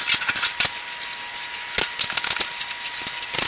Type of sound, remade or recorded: recorded